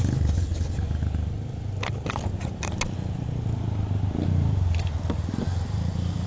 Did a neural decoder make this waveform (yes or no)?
no